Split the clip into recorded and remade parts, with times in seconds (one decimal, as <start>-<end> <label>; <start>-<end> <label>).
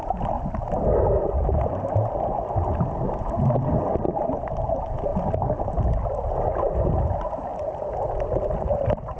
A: 0.0-1.7 recorded; 1.7-3.9 remade; 3.9-5.1 recorded; 5.1-5.8 remade; 5.8-9.2 recorded